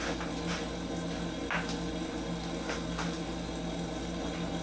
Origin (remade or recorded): recorded